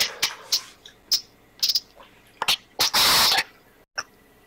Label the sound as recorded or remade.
recorded